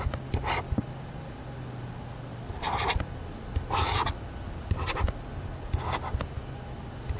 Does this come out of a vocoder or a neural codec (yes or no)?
no